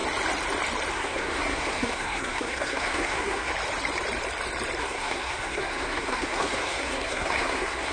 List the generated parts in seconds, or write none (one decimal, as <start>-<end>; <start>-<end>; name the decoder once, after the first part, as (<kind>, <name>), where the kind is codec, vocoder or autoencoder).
0.9-3.5 (codec, SNAC); 4.8-7.9